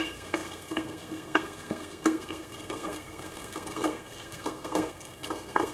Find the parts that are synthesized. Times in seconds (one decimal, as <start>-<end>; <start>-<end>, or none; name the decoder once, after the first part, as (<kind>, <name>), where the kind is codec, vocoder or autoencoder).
0.0-5.7 (codec, SNAC)